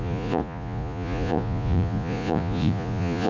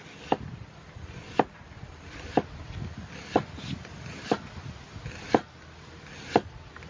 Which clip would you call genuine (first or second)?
second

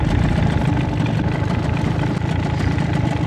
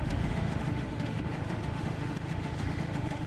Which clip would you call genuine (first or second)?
first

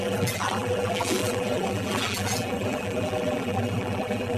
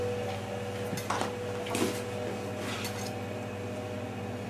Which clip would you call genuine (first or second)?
second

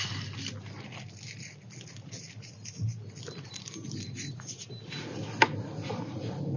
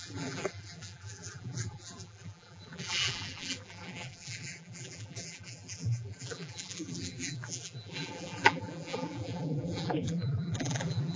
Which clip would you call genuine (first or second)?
first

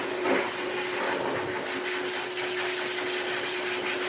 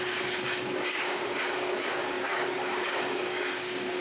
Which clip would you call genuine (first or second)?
first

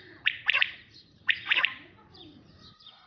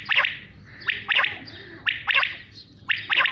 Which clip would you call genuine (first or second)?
second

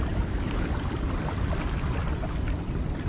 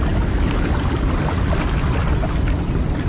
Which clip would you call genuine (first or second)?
second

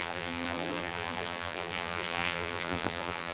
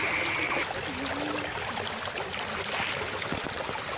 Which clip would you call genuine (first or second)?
second